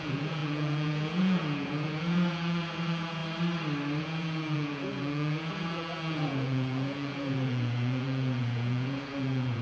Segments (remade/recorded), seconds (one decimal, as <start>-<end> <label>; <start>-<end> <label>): 0.0-3.2 remade; 3.2-4.0 recorded; 4.0-9.6 remade